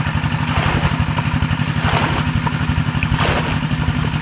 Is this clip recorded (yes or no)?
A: yes